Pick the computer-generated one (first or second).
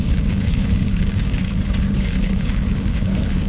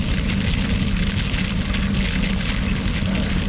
first